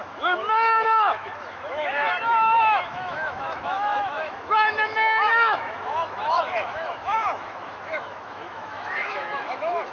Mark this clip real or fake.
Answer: fake